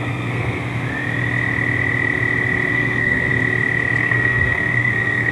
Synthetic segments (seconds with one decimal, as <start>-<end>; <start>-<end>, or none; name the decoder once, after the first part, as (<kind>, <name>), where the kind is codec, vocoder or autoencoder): 0.0-0.6 (codec, SNAC); 2.7-3.3; 4.0-5.3